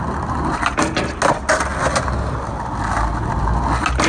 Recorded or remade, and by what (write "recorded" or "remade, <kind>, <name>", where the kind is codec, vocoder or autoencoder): recorded